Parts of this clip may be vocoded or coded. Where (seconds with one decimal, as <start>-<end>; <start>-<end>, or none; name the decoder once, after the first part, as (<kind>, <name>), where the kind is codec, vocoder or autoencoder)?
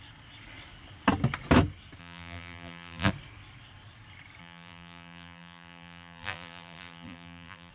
2.0-3.1 (vocoder, BigVGAN v2); 4.4-7.7